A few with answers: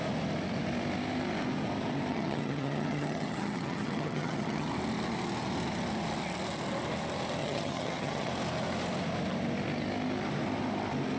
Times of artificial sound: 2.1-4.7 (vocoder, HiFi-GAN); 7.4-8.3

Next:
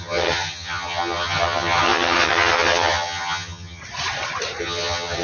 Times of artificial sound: 0.0-3.8 (vocoder, HiFi-GAN); 4.6-5.2

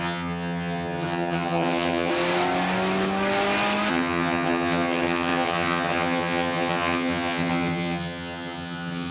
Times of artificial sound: 0.0-2.1 (vocoder, HiFi-GAN); 3.9-9.1

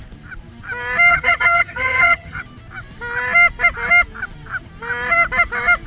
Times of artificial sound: 1.1-2.4 (vocoder, HiFi-GAN)

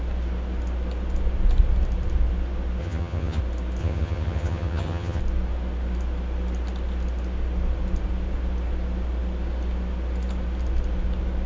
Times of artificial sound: 2.8-3.4 (vocoder, HiFi-GAN); 3.8-5.2